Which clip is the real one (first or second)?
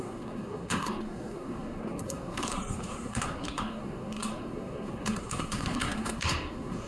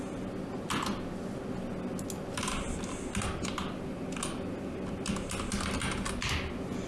second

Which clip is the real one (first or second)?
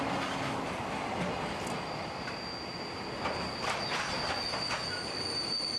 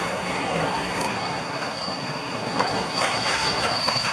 first